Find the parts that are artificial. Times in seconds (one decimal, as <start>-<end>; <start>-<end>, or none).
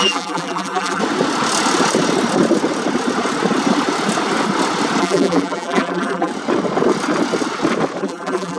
0.0-1.0; 5.0-6.3; 8.0-8.6